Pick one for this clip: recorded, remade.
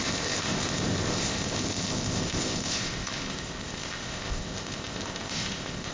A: remade